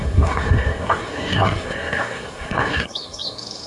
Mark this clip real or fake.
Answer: fake